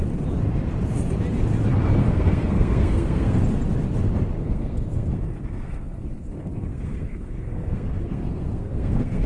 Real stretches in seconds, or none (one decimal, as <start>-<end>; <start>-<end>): 0.0-2.0; 3.4-4.4